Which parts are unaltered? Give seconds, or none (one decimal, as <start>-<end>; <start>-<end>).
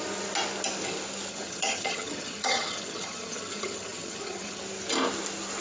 0.0-1.3; 4.6-5.6